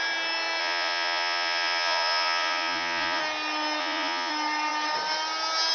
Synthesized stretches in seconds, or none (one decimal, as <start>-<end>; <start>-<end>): 0.6-3.2; 3.8-4.3